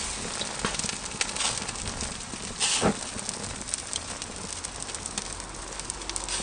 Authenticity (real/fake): real